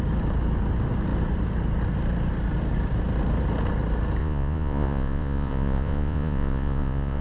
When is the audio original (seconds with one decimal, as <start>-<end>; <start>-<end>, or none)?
0.0-4.2